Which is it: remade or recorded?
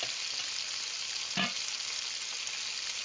recorded